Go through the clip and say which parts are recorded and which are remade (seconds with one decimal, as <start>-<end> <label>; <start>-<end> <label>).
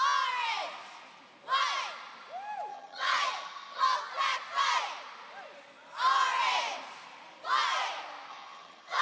0.0-2.7 recorded; 2.7-3.8 remade; 3.8-8.3 recorded; 8.3-9.0 remade